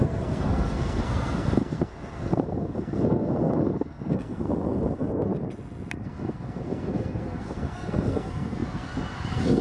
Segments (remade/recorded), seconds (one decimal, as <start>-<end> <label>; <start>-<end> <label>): 0.0-5.3 remade; 5.3-6.0 recorded; 6.0-9.6 remade